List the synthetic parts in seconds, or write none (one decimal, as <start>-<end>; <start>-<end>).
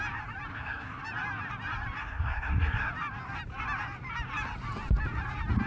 0.5-1.0; 2.0-2.9